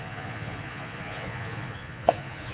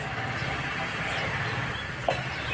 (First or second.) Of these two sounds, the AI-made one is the first